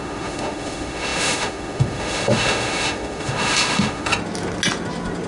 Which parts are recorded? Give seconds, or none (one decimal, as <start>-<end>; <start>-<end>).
4.1-5.3

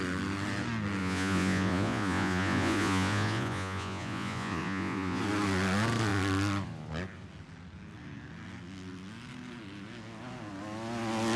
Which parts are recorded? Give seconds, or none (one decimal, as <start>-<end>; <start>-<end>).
0.0-1.0; 5.2-11.4

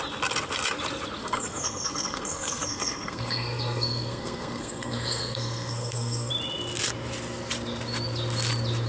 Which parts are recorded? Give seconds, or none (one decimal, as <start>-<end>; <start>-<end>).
0.0-1.2; 6.3-8.9

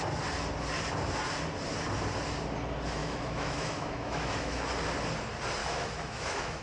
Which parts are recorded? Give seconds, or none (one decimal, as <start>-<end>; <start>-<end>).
0.0-3.0; 4.7-5.6

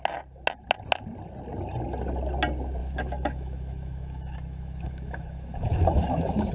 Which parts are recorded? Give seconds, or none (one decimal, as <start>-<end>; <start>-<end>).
0.0-2.8

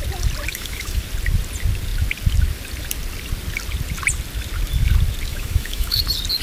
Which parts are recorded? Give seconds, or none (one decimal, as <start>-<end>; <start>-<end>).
0.0-0.5; 1.0-5.3; 6.0-6.4

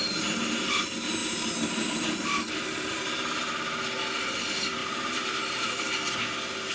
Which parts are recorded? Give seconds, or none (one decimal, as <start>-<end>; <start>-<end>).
0.0-1.2; 3.0-4.8; 5.9-6.7